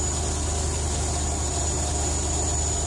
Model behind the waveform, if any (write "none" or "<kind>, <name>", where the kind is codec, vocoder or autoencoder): none